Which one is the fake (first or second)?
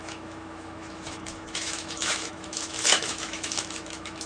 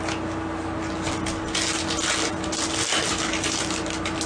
first